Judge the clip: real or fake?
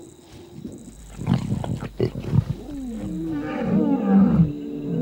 real